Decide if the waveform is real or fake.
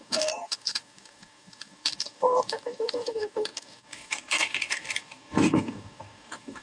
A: fake